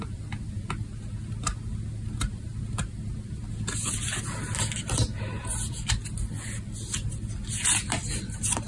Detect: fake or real real